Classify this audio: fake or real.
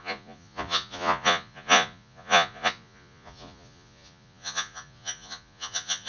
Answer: fake